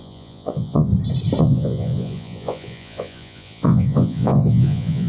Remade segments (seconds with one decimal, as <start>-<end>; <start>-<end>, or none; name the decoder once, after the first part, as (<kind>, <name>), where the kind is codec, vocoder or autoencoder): 0.0-0.9 (vocoder, Vocos); 1.4-5.1